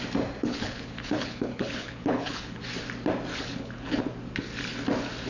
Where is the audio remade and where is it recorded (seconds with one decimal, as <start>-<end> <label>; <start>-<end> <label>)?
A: 0.0-0.4 recorded; 0.4-2.6 remade; 2.6-3.3 recorded; 3.3-4.0 remade; 4.0-5.3 recorded